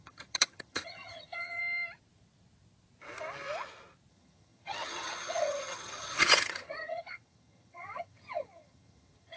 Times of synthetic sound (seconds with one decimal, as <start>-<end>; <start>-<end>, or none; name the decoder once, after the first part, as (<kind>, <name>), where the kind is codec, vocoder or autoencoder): 0.0-1.6 (vocoder, HiFi-GAN); 4.1-9.4